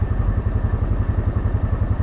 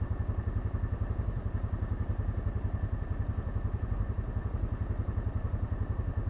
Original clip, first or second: first